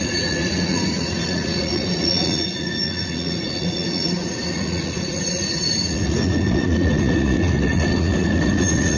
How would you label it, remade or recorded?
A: remade